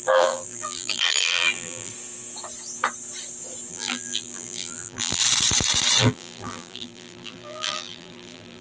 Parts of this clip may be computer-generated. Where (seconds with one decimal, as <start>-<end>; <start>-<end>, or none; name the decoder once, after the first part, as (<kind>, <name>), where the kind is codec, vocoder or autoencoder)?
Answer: 0.0-1.9 (vocoder, BigVGAN v2); 3.7-5.2; 6.0-8.6